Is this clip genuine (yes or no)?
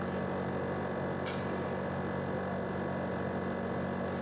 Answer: yes